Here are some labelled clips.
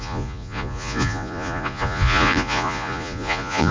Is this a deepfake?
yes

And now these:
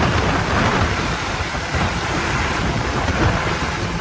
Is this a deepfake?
yes